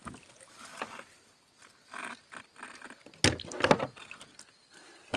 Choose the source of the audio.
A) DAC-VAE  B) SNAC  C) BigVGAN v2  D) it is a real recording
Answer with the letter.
D